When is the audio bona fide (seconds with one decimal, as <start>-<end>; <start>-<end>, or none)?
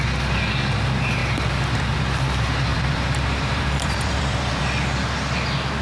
0.0-1.2; 2.0-2.7; 4.6-5.8